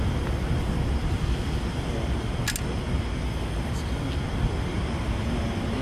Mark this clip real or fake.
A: real